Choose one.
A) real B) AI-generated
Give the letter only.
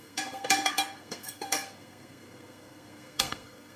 B